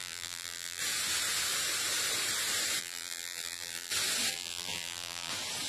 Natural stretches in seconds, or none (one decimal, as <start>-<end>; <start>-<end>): 0.8-2.8; 3.9-4.3; 5.3-5.7